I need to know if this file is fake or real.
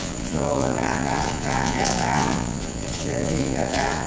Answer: fake